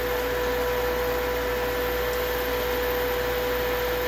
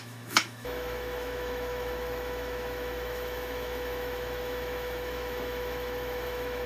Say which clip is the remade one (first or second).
second